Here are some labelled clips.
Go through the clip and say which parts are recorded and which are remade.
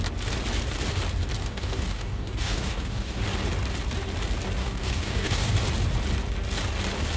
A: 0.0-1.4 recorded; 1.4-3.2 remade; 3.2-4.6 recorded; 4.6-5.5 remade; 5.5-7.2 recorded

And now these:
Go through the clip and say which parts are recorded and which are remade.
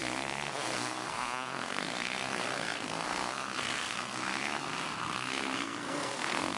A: 0.0-6.6 remade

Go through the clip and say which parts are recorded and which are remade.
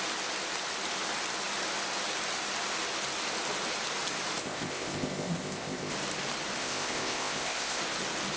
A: 0.0-4.4 recorded; 4.4-5.9 remade; 5.9-6.6 recorded; 6.6-7.8 remade; 7.8-8.4 recorded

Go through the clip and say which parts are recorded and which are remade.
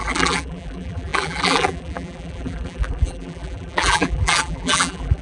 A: 0.0-5.2 remade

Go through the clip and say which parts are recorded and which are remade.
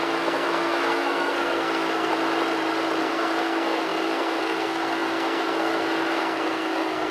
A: 0.0-2.1 remade; 2.1-3.0 recorded; 3.0-7.1 remade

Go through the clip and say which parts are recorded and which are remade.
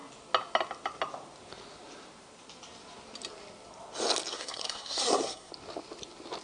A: 0.0-4.3 recorded; 4.3-5.5 remade; 5.5-6.4 recorded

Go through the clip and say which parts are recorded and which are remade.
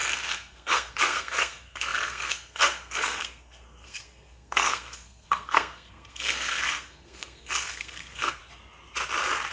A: 0.0-8.4 remade; 8.4-9.5 recorded